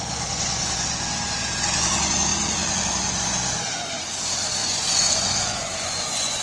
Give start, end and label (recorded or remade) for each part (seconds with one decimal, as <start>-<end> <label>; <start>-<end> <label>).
0.0-6.4 remade